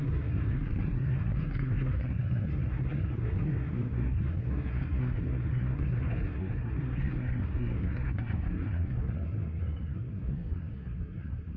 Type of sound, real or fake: fake